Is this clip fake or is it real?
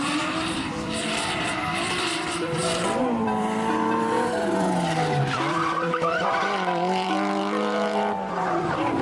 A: fake